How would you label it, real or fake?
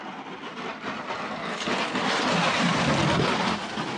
real